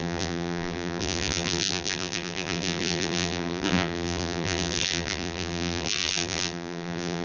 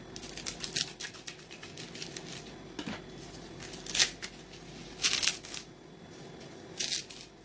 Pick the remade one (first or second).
first